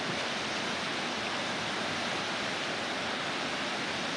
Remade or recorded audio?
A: recorded